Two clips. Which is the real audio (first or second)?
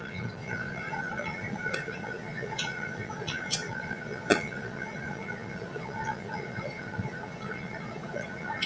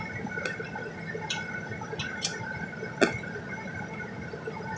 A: second